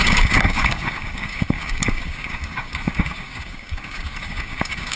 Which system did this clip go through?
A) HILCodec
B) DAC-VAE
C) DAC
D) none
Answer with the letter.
C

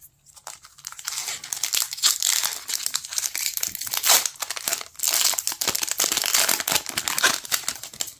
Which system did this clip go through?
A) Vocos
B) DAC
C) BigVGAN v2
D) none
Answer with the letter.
D